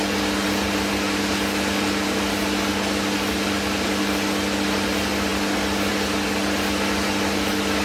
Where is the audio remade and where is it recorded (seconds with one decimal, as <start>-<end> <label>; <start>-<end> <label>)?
0.0-7.8 recorded